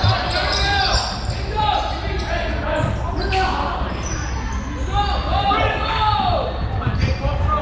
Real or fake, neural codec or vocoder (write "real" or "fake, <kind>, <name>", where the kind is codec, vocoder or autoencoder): real